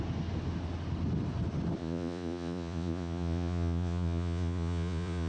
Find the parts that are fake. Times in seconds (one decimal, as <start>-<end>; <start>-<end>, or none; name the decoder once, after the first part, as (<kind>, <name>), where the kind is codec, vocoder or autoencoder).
1.8-5.3 (vocoder, Vocos)